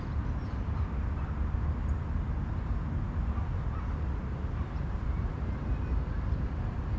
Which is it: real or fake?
real